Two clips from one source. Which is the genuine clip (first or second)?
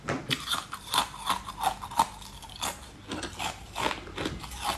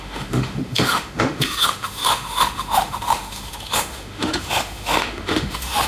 first